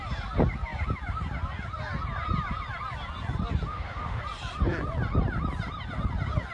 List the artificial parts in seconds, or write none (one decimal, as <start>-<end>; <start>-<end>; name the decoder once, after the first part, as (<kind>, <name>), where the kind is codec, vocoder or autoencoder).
3.7-4.2 (autoencoder, DAC-VAE)